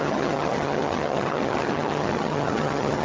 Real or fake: fake